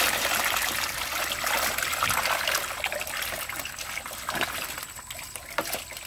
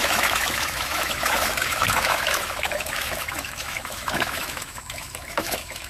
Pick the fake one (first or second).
second